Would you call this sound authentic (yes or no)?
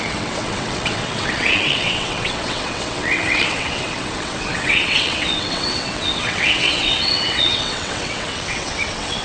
no